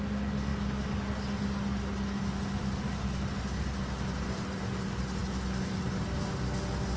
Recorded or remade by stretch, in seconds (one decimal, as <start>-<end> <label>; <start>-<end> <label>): 0.0-7.0 recorded